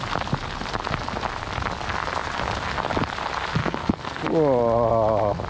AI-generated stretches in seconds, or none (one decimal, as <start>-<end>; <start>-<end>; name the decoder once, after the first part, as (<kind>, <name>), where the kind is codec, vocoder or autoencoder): 3.6-4.2 (codec, SNAC)